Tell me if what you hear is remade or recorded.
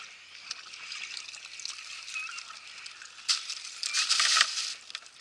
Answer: recorded